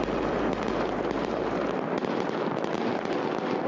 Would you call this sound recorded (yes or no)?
yes